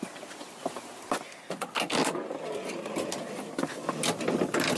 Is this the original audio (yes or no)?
yes